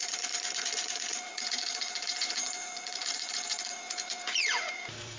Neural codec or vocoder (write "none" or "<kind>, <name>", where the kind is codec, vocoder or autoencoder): vocoder, Vocos